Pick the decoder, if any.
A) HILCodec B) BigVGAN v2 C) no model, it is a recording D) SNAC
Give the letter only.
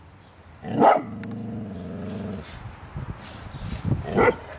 C